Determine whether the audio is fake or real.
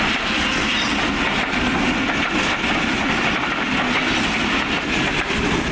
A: real